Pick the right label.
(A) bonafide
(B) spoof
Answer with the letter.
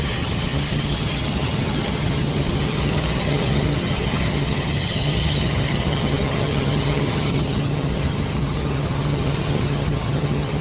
B